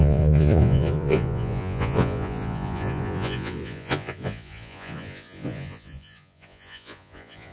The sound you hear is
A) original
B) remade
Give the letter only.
B